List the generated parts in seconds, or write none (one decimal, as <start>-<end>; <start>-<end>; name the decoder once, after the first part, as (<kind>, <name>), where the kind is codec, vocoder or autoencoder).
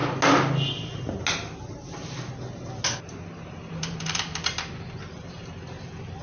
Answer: 3.7-4.3 (vocoder, BigVGAN v2); 5.0-5.4